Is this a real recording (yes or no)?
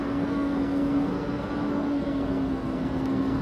no